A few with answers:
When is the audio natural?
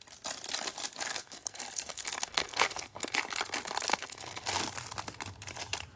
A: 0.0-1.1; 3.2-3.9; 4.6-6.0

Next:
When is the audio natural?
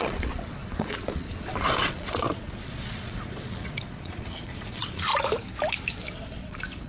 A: 5.1-6.2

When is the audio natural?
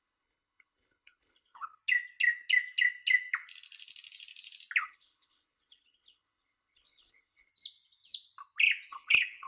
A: 1.8-4.8; 7.5-8.9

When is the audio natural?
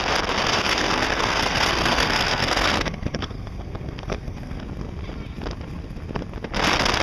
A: 0.0-0.4; 4.6-7.0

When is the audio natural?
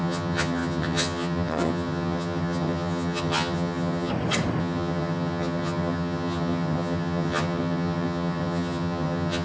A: 4.1-4.6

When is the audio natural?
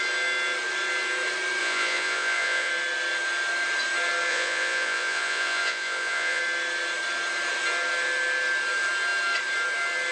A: 0.0-1.6; 2.7-4.3; 6.4-10.1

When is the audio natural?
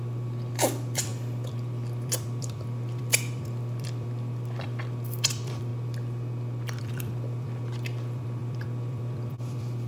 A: 5.7-6.8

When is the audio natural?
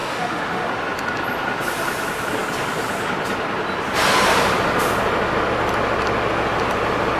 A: 0.7-7.2